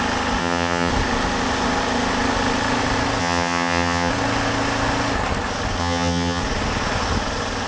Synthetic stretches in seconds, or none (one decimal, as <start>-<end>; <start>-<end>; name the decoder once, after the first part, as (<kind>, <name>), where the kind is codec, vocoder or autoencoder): 0.4-0.9 (vocoder, HiFi-GAN); 3.2-4.1; 5.8-6.4